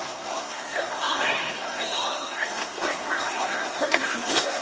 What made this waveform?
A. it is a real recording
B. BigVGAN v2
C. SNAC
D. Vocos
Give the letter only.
C